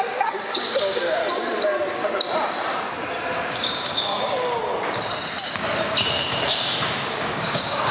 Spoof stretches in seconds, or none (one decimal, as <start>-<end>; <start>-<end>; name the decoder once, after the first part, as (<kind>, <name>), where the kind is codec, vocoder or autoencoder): 0.0-1.2 (codec, DAC); 3.5-4.6; 6.0-7.9